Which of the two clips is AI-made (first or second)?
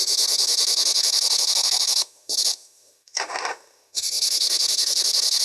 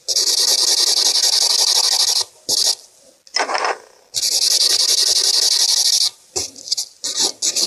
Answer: first